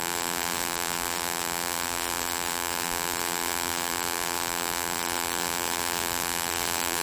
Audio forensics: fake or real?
fake